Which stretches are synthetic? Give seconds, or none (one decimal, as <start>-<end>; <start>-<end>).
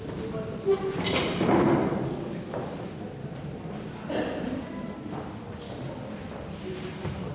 none